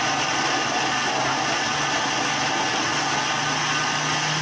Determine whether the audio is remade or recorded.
recorded